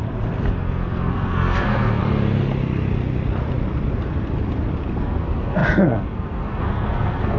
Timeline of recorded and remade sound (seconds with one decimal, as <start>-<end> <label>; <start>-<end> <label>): 0.0-0.5 recorded; 0.5-2.0 remade; 2.0-5.0 recorded; 5.0-7.4 remade

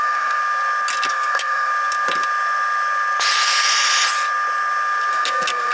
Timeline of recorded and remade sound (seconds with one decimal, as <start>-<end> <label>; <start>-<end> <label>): 0.0-0.4 remade; 0.4-1.1 recorded; 1.1-1.7 remade; 1.7-5.1 recorded; 5.1-5.7 remade